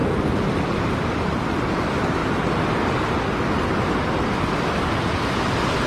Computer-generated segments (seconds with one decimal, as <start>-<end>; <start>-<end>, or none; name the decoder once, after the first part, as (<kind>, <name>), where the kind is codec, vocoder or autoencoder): none